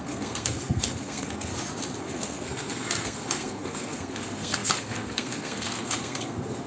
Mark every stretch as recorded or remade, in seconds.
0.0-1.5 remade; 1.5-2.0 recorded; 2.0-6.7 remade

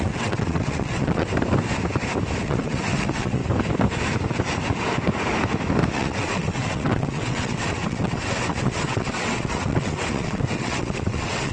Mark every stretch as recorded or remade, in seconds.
0.0-1.3 remade; 1.3-2.4 recorded; 2.4-3.4 remade; 3.4-5.9 recorded; 5.9-11.5 remade

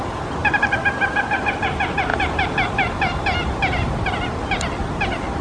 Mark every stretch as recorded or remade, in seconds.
0.0-5.4 recorded

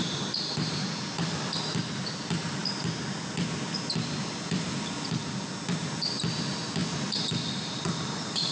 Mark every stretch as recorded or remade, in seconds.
0.0-2.6 remade; 2.6-4.5 recorded; 4.5-6.8 remade; 6.8-8.1 recorded; 8.1-8.5 remade

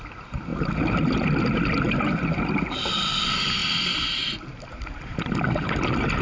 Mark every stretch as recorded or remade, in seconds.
0.0-6.2 recorded